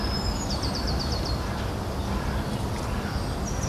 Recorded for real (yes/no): yes